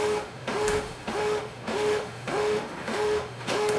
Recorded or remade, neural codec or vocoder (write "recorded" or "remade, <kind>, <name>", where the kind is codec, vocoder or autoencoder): remade, autoencoder, DAC-VAE